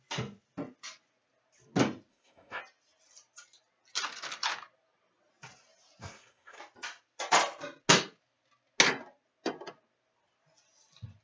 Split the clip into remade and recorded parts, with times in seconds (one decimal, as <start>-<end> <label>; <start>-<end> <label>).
0.0-2.1 recorded; 2.1-2.6 remade; 2.6-6.0 recorded; 6.0-6.6 remade; 6.6-11.2 recorded